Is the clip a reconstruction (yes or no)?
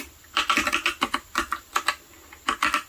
no